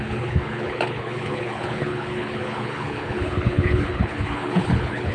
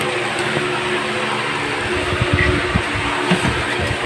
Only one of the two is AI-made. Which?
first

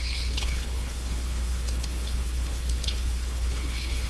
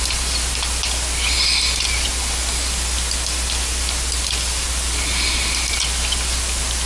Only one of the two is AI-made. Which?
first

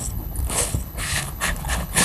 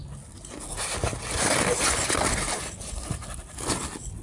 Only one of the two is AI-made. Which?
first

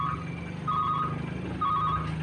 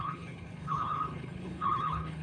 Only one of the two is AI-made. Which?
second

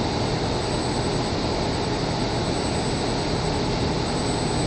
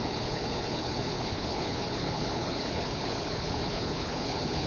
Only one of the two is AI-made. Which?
second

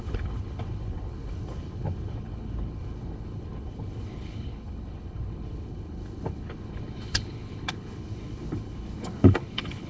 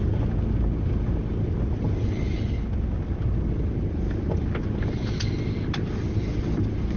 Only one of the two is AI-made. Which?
first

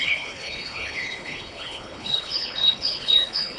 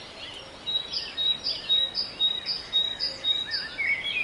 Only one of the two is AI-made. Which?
first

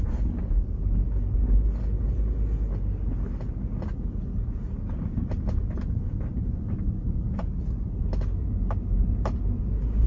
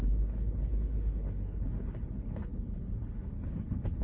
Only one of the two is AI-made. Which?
second